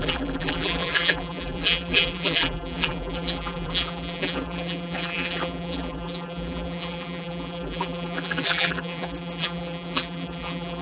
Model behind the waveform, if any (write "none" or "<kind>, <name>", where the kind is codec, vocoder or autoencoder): vocoder, BigVGAN v2